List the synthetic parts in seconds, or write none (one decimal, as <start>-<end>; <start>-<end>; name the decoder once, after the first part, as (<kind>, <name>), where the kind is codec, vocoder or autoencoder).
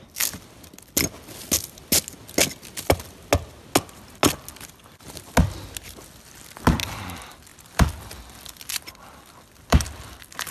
7.5-10.5 (vocoder, BigVGAN v2)